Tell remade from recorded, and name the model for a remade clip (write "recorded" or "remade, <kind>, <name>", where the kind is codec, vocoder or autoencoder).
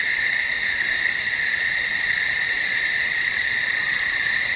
recorded